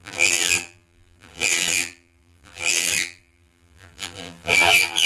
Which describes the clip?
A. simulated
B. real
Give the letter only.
A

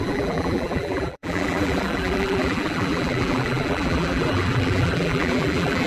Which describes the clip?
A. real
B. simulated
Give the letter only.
B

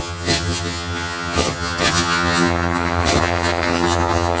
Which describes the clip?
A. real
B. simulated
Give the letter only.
B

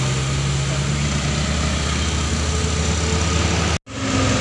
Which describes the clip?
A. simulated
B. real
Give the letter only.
B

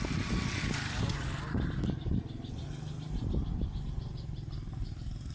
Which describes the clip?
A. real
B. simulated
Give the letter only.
A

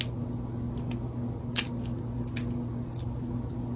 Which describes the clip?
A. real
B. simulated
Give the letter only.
A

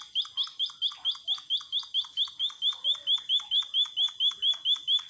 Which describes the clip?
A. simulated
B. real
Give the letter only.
B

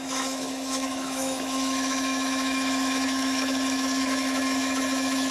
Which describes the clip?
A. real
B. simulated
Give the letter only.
B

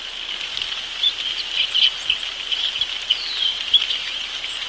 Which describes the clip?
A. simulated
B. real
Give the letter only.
B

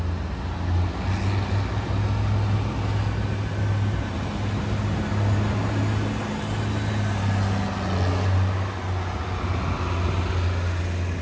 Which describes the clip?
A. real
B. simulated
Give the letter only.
A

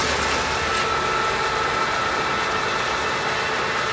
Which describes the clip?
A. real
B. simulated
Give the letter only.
A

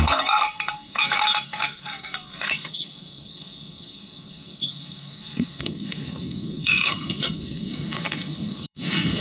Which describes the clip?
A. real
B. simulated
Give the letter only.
B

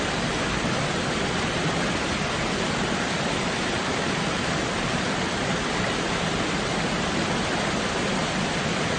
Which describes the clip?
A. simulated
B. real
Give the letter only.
B